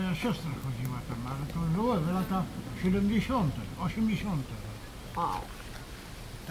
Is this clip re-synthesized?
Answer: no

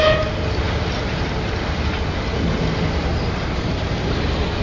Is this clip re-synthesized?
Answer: no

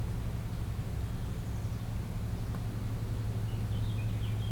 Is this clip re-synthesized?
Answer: no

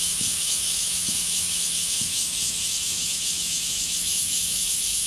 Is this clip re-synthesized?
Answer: yes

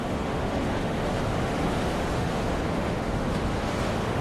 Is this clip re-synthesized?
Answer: yes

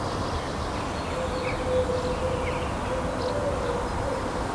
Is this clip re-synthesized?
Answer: no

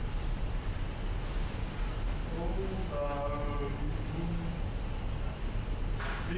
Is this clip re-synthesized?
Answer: no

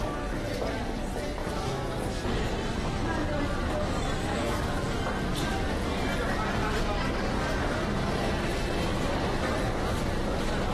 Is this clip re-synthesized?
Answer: no